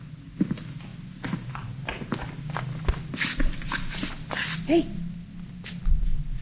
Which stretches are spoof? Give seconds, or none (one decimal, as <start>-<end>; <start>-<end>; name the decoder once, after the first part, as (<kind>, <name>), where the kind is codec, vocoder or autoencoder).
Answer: none